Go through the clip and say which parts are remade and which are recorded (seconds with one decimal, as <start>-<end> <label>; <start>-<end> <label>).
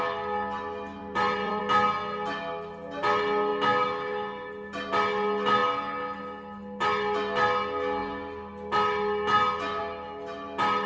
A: 0.0-1.0 recorded; 1.0-1.6 remade; 1.6-10.9 recorded